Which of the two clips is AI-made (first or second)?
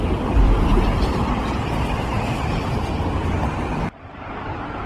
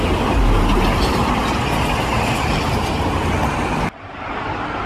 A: first